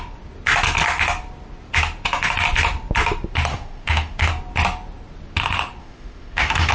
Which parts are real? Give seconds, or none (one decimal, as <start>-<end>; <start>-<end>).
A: 0.0-3.5; 4.3-5.8